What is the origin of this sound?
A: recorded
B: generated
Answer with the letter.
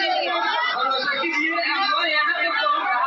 A